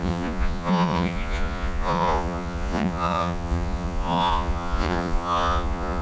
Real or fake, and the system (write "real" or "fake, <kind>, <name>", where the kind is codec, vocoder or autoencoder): fake, vocoder, Vocos